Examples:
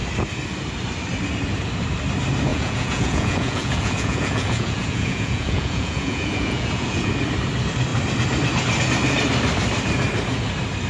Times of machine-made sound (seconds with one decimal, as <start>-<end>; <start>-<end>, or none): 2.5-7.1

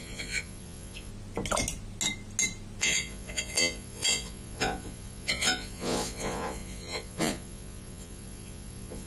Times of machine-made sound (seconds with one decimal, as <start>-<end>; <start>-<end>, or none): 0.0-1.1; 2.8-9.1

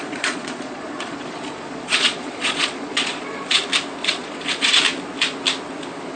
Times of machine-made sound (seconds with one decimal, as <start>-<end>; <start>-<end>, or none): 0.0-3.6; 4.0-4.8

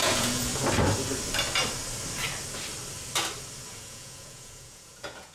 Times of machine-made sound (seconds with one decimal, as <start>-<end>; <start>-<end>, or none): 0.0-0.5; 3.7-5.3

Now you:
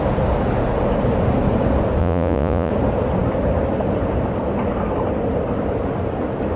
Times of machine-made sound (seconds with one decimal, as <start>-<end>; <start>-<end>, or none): 2.0-2.7